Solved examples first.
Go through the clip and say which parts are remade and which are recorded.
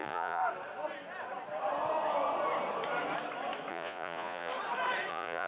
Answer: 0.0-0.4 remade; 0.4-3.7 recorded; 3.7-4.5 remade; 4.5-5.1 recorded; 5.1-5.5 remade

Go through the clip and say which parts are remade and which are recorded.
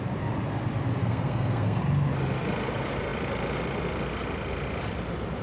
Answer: 0.0-1.0 recorded; 1.0-1.8 remade; 1.8-5.4 recorded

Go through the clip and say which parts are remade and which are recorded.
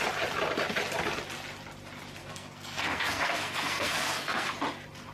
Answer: 0.0-2.2 recorded; 2.2-4.5 remade; 4.5-5.1 recorded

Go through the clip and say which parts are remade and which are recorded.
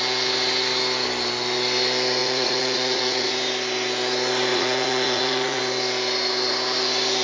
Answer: 0.0-2.2 recorded; 2.2-3.3 remade; 3.3-4.5 recorded; 4.5-5.6 remade; 5.6-7.2 recorded